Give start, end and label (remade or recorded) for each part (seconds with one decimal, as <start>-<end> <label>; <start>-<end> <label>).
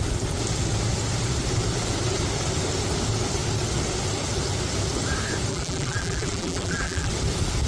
0.0-5.5 recorded; 5.5-7.1 remade; 7.1-7.7 recorded